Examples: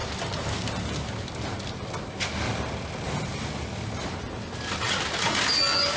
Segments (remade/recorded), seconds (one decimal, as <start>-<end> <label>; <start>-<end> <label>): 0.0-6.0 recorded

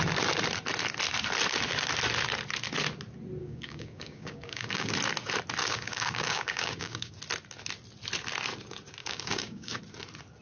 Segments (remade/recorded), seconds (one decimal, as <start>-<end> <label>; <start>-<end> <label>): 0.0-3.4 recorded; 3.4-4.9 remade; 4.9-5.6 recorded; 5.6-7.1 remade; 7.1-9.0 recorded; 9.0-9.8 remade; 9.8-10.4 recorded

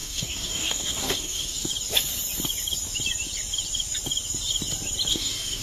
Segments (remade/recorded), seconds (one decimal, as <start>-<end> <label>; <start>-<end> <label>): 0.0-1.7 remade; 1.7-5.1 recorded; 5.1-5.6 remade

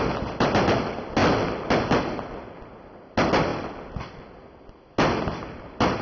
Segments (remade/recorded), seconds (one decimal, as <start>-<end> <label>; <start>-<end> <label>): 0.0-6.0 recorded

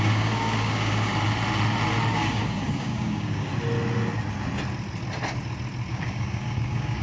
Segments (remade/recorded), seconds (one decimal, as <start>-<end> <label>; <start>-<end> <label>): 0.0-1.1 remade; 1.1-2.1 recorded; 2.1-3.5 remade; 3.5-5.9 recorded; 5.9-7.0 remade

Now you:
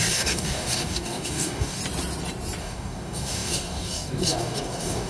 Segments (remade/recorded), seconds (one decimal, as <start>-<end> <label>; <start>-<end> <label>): 0.0-1.8 remade; 1.8-2.6 recorded; 2.6-5.1 remade

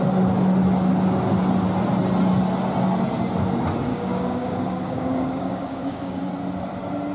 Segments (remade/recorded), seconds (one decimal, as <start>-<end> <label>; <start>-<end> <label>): 0.0-3.9 recorded; 3.9-6.2 remade; 6.2-7.1 recorded

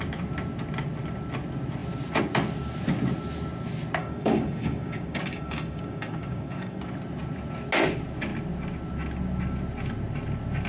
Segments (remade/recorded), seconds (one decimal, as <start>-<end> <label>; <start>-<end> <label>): 0.0-4.0 recorded; 4.0-6.8 remade; 6.8-10.7 recorded